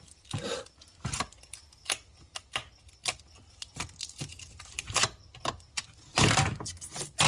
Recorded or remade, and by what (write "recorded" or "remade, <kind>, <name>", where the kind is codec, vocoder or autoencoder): recorded